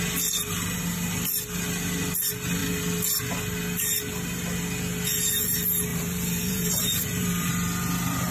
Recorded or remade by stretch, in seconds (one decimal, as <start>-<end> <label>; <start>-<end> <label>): 0.0-5.9 recorded; 5.9-7.5 remade; 7.5-8.3 recorded